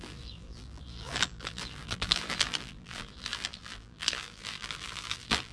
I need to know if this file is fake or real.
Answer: fake